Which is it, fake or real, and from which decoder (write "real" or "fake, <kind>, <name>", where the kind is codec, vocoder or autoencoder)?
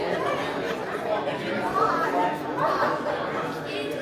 real